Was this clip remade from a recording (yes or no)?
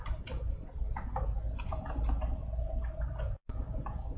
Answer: no